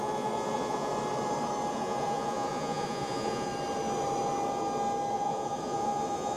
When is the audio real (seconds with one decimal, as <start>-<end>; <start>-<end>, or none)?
0.9-1.7; 3.5-5.1